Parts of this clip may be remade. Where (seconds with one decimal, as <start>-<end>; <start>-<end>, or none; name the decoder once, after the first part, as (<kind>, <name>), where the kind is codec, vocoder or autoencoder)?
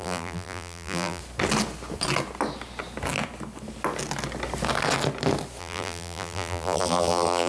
0.0-1.2 (vocoder, BigVGAN v2); 5.6-7.5